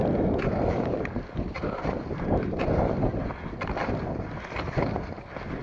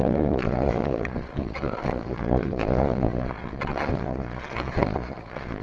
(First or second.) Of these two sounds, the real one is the first